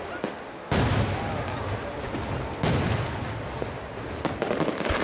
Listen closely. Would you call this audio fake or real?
real